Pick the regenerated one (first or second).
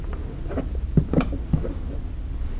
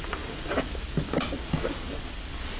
second